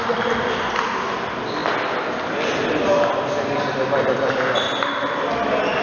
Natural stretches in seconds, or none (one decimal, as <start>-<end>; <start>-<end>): 0.0-5.8